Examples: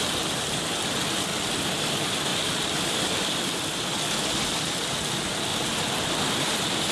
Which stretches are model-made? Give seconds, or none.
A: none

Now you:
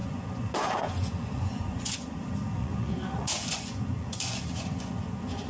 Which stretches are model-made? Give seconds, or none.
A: 0.0-2.1 (vocoder, Vocos); 2.6-5.5

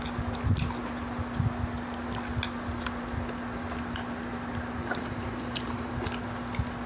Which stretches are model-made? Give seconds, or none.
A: 4.8-5.9 (vocoder, BigVGAN v2)

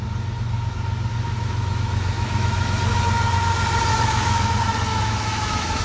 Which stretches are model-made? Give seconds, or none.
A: 1.1-3.0 (autoencoder, DAC-VAE); 3.9-4.5; 4.9-5.8

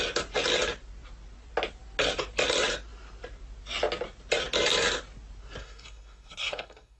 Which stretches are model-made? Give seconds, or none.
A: 5.6-7.0 (codec, SNAC)

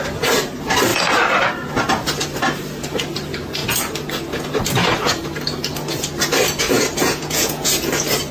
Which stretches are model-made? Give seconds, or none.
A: 7.0-7.7 (vocoder, Vocos)